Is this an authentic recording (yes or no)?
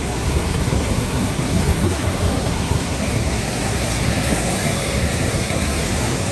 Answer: no